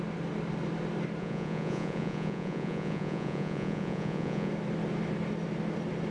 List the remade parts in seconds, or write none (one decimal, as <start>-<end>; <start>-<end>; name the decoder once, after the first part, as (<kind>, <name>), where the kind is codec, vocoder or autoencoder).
1.2-4.5 (vocoder, Vocos)